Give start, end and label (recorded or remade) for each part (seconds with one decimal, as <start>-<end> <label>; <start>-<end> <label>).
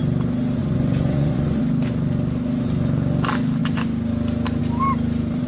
0.0-0.6 recorded; 0.6-1.6 remade; 1.6-5.5 recorded